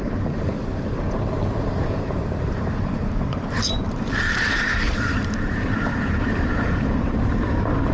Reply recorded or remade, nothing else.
remade